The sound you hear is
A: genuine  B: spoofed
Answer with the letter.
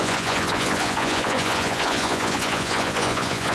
B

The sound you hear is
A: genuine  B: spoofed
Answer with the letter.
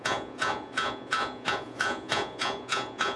B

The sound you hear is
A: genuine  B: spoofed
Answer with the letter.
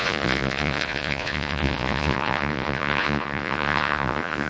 B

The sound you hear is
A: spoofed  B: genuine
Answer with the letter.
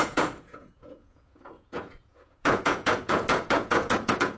A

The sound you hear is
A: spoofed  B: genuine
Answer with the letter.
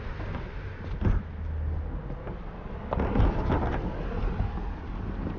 B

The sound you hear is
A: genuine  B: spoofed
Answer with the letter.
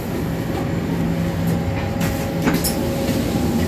A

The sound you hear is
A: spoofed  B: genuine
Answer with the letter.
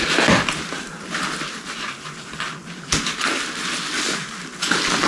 B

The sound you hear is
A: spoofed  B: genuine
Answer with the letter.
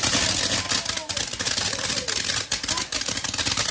B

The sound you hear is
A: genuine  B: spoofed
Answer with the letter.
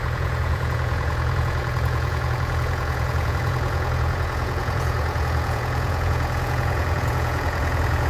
B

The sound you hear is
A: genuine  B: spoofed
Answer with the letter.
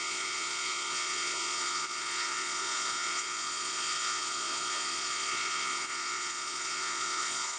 B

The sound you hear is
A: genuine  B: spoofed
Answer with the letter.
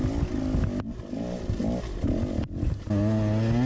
A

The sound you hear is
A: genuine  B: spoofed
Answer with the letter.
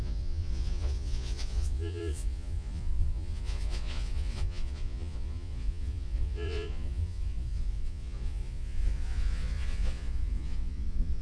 B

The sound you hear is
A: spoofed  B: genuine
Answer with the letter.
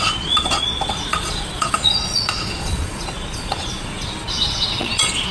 A